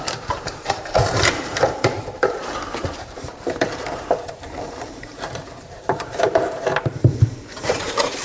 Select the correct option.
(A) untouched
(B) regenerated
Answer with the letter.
B